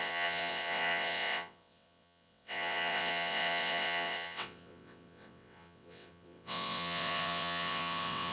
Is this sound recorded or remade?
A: remade